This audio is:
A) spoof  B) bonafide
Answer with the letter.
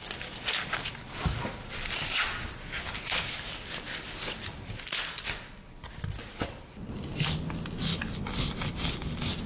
B